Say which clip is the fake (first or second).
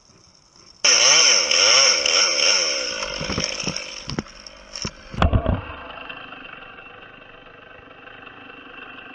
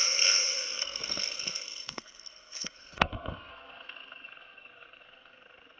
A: second